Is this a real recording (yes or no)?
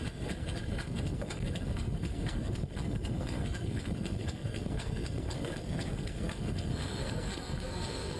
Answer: no